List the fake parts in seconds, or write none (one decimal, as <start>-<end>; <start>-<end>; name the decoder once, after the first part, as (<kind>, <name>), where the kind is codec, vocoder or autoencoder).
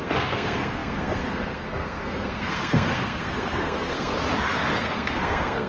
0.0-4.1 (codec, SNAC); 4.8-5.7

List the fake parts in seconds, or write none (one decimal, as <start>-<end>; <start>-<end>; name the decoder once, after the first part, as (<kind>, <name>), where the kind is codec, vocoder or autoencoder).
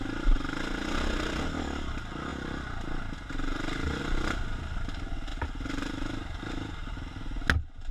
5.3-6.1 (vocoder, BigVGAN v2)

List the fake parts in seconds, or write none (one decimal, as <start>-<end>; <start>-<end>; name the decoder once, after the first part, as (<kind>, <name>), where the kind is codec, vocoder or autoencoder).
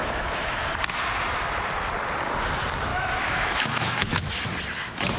0.0-0.6 (autoencoder, DAC-VAE); 2.9-4.3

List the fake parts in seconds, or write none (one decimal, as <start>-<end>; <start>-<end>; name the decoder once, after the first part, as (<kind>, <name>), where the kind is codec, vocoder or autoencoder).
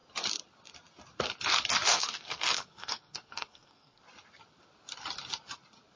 1.9-4.0 (codec, SNAC)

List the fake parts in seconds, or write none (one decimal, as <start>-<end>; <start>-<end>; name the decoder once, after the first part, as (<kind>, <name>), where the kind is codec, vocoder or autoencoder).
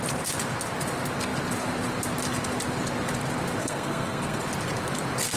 3.6-4.4 (codec, SNAC)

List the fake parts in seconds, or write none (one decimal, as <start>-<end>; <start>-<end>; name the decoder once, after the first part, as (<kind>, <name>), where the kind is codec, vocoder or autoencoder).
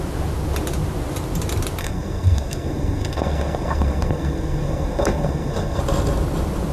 1.8-5.8 (codec, SNAC)